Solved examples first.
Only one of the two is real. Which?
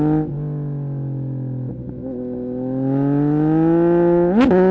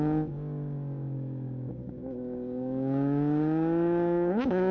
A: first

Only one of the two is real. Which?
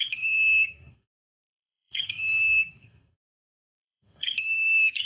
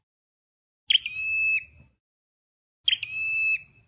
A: second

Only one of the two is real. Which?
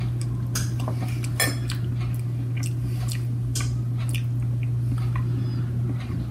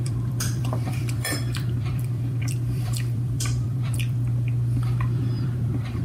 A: first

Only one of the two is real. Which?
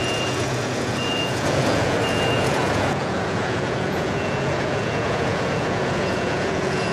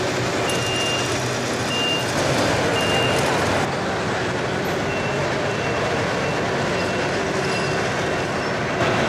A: second